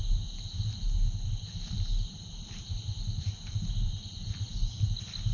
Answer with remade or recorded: recorded